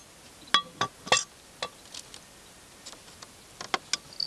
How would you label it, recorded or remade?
recorded